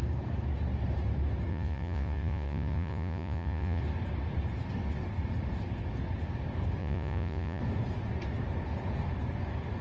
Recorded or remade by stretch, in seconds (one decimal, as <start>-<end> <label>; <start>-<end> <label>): 0.0-1.5 recorded; 1.5-3.8 remade; 3.8-6.8 recorded; 6.8-7.6 remade; 7.6-9.8 recorded